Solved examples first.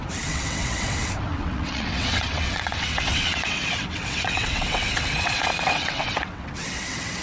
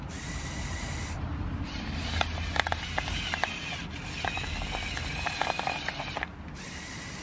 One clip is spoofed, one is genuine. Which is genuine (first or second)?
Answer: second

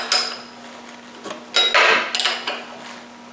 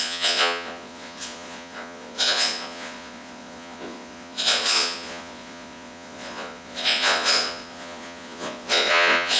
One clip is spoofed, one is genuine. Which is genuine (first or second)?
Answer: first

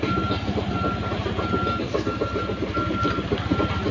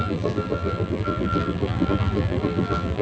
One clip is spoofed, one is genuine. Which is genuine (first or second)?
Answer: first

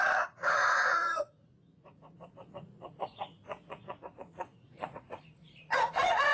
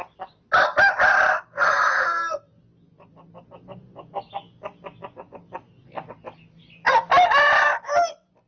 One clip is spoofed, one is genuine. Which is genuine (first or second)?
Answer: second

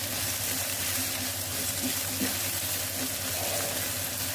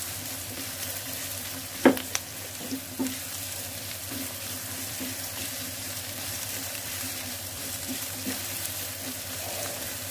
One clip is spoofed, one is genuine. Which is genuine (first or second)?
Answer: first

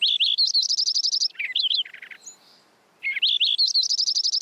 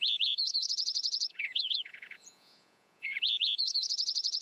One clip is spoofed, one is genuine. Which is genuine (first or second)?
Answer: first